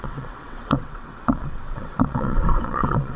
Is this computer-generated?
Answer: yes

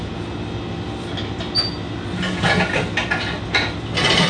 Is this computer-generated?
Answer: no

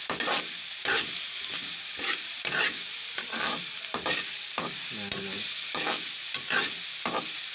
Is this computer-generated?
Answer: no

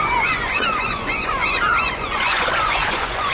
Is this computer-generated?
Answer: yes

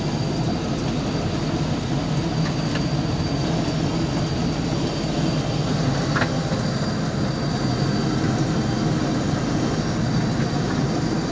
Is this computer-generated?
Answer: no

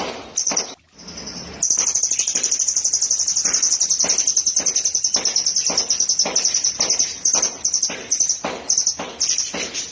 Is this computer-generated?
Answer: no